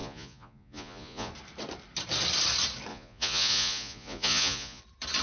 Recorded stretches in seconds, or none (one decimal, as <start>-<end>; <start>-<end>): 1.3-2.9; 4.8-5.2